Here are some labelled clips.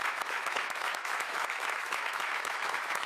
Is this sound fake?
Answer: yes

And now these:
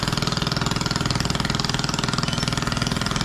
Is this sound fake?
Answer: no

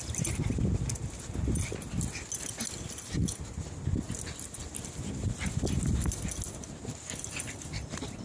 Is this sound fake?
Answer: no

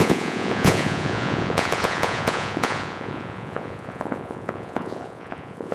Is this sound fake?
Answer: yes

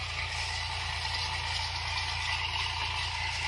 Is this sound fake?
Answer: no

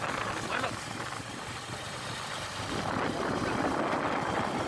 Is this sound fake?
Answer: no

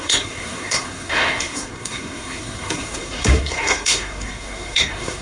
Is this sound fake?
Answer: yes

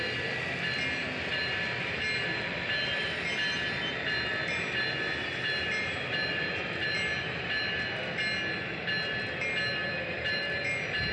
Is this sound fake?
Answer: no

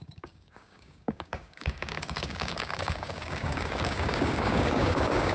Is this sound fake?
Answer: yes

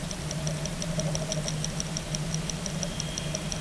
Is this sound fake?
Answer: no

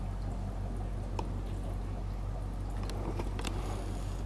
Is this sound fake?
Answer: no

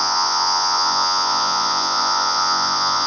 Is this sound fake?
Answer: yes